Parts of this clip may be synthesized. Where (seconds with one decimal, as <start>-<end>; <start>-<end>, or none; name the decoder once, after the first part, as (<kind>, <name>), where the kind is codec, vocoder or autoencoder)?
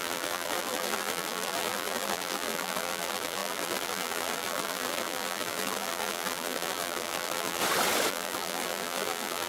0.0-7.6 (vocoder, BigVGAN v2); 8.1-9.5